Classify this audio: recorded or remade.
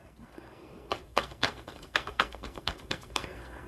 remade